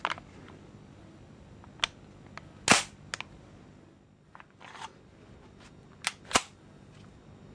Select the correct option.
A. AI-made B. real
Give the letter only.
B